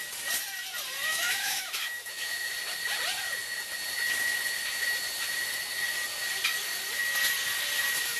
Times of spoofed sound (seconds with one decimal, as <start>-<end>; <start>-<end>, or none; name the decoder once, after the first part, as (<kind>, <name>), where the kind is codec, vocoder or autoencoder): 1.1-2.5 (autoencoder, DAC-VAE)